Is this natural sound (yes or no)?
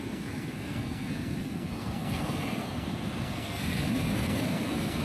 no